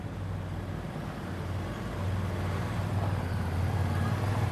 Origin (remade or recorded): recorded